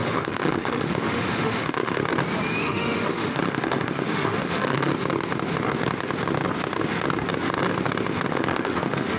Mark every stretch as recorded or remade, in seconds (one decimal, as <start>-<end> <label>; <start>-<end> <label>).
0.0-2.0 remade; 2.0-2.6 recorded; 2.6-4.9 remade; 4.9-8.3 recorded; 8.3-9.2 remade